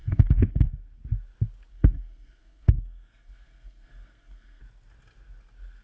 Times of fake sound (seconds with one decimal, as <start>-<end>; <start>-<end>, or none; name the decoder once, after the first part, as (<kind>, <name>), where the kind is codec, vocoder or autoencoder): 0.0-0.7 (codec, SNAC); 1.7-4.6

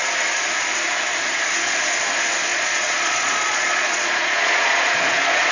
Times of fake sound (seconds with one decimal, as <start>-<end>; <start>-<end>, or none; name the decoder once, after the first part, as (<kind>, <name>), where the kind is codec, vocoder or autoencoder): 2.5-5.5 (vocoder, Vocos)

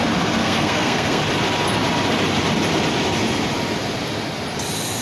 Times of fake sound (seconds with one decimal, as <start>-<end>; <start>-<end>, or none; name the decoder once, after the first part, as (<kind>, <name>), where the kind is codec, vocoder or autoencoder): 0.4-1.2 (codec, SNAC)